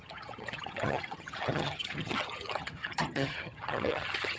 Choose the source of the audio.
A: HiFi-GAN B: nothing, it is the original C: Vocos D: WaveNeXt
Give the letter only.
A